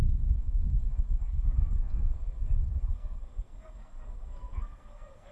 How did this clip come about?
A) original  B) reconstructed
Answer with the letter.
B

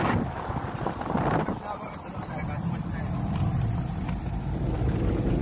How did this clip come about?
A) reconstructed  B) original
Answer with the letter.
B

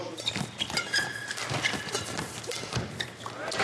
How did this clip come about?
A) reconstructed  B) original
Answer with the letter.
B